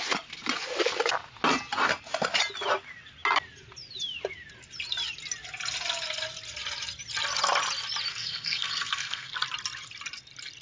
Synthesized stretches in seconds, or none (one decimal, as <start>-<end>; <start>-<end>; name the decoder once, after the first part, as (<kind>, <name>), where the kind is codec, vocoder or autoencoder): 8.1-9.3 (codec, SNAC)